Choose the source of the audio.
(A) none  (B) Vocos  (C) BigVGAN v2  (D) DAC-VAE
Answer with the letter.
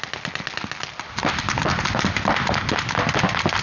A